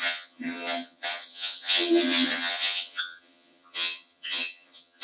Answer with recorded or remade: remade